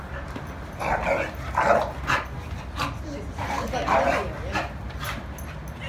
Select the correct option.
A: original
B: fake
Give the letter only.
A